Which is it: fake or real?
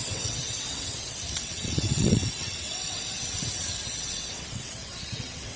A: fake